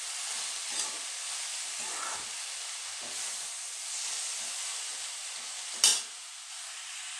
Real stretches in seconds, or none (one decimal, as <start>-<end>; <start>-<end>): 0.0-7.2